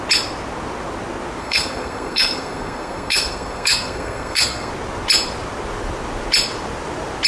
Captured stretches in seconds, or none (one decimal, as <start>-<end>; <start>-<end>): 0.0-1.4; 4.7-7.3